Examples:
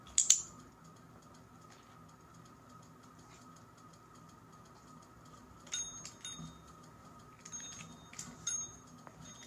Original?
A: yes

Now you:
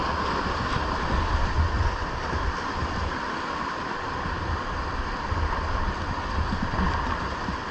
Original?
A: yes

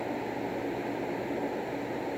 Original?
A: yes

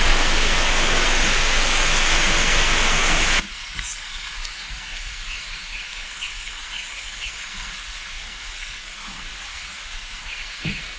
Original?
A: no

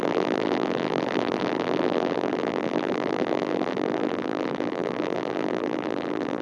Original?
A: no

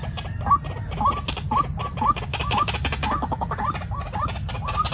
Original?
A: yes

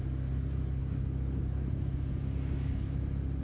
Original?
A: yes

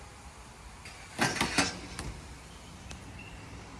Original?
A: yes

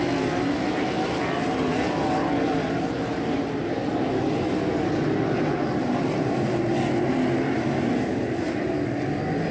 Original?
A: yes